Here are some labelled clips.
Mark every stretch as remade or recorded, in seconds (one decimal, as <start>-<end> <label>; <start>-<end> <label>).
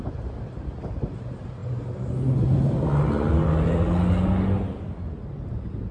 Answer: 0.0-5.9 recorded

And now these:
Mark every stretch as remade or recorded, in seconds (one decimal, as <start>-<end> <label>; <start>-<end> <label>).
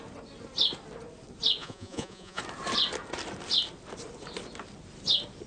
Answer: 0.0-1.6 recorded; 1.6-2.4 remade; 2.4-5.5 recorded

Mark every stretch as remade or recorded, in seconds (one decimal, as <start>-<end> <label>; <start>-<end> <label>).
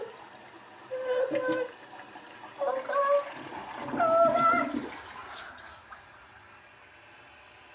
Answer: 0.0-5.2 recorded; 5.2-5.8 remade; 5.8-7.7 recorded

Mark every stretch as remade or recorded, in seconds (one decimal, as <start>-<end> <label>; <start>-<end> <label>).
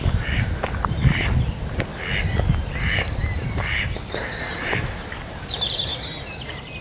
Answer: 0.0-1.9 remade; 1.9-2.6 recorded; 2.6-5.9 remade; 5.9-6.8 recorded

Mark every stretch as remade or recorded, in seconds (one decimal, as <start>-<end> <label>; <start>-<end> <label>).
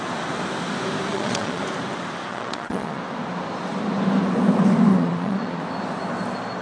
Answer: 0.0-1.1 recorded; 1.1-1.6 remade; 1.6-2.3 recorded; 2.3-3.0 remade; 3.0-4.9 recorded; 4.9-5.6 remade; 5.6-6.6 recorded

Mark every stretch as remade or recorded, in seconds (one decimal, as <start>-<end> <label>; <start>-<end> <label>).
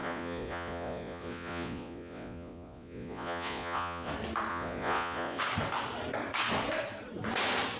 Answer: 0.0-4.1 remade; 4.1-4.5 recorded; 4.5-5.4 remade; 5.4-7.8 recorded